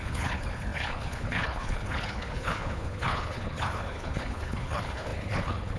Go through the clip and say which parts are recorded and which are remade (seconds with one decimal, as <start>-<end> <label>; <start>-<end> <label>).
0.0-5.8 remade